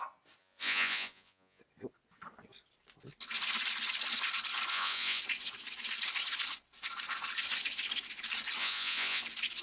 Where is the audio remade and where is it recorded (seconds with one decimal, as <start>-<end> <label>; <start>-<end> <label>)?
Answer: 0.0-0.4 recorded; 0.4-1.6 remade; 1.6-4.7 recorded; 4.7-5.2 remade; 5.2-8.6 recorded; 8.6-9.2 remade; 9.2-9.6 recorded